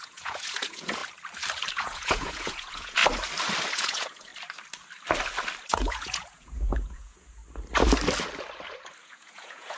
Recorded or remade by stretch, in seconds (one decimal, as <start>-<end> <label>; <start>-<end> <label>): 0.0-1.0 remade; 1.0-1.7 recorded; 1.7-3.0 remade; 3.0-3.7 recorded; 3.7-4.3 remade; 4.3-5.7 recorded; 5.7-7.4 remade; 7.4-9.0 recorded; 9.0-9.8 remade